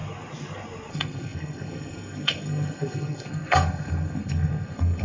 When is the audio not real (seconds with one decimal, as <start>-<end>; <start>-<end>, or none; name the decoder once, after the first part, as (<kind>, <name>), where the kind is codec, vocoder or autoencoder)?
0.9-5.0 (codec, SNAC)